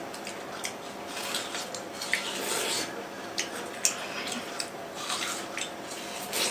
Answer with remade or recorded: recorded